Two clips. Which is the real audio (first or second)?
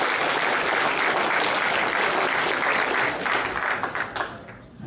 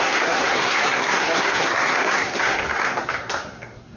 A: first